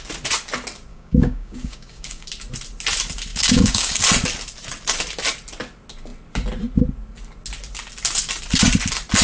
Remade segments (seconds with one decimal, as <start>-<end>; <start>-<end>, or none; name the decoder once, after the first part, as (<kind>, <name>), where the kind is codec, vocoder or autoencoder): 0.9-2.3 (codec, DAC); 3.3-4.0